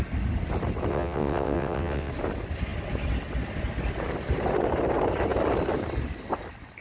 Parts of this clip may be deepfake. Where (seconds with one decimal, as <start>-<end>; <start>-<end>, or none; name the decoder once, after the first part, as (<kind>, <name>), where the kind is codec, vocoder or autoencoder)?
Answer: 0.9-2.1 (vocoder, WaveNeXt)